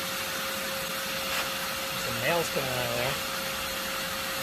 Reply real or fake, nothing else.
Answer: real